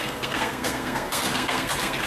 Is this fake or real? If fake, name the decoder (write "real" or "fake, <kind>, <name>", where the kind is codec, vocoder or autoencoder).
fake, codec, SNAC